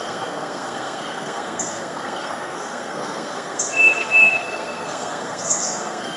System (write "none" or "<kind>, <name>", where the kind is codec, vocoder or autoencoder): codec, SNAC